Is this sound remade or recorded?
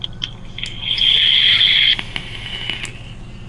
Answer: recorded